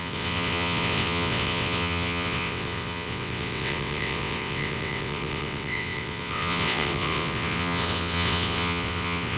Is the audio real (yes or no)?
no